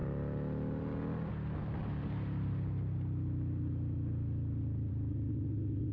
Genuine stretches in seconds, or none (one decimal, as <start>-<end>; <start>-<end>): 0.0-5.9